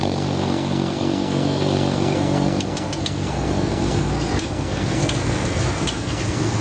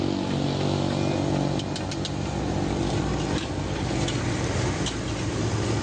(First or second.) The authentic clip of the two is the second